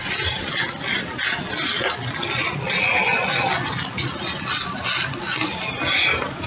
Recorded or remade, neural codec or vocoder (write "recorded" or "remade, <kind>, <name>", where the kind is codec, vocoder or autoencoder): recorded